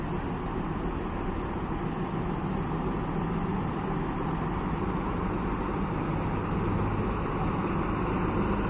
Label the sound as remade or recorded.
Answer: recorded